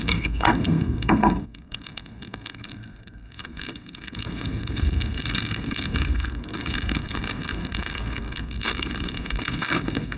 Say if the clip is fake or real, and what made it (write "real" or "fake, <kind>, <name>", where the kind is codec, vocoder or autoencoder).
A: fake, codec, SNAC